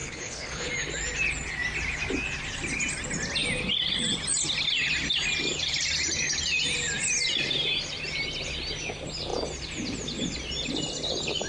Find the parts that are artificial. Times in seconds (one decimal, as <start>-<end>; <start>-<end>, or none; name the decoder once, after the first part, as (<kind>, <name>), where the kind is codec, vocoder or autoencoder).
0.0-0.7 (codec, HILCodec)